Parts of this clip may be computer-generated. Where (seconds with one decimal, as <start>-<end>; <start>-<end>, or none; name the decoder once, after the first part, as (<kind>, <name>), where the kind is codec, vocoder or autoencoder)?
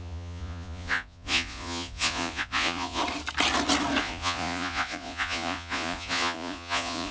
0.0-3.0 (vocoder, Vocos); 4.0-7.1